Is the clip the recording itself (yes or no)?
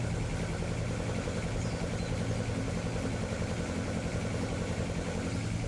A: yes